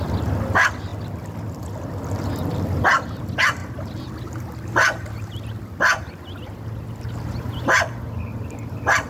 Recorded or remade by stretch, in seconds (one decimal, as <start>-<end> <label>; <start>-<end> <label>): 0.0-9.1 recorded